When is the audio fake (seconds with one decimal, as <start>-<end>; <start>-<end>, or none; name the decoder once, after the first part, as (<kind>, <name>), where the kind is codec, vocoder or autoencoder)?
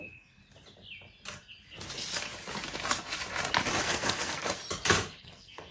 0.0-0.4 (codec, SNAC); 3.8-4.6; 5.2-5.7